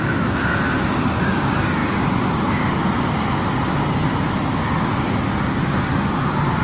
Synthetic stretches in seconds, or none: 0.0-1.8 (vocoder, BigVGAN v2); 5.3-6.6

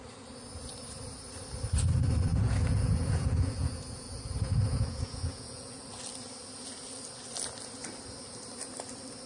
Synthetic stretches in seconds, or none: 2.3-5.8 (vocoder, Vocos)

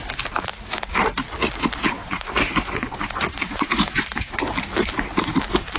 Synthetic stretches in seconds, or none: 2.0-4.4 (vocoder, Vocos)

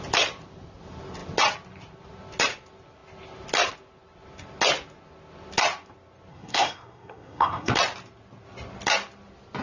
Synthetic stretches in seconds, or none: 6.3-7.7 (codec, SNAC)

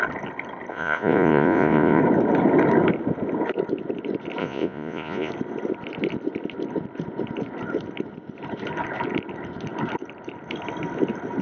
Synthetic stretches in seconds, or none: 0.7-2.0 (vocoder, Vocos); 4.4-5.3

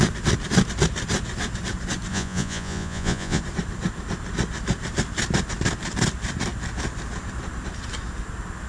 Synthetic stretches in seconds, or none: 2.1-3.4 (vocoder, Vocos)

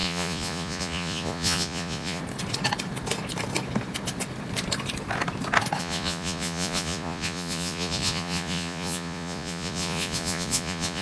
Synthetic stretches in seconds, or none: 0.0-2.2 (vocoder, Vocos); 5.8-11.0